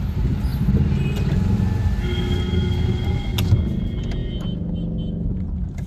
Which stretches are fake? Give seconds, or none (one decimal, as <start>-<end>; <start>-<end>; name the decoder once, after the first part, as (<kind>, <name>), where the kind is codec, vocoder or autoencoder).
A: none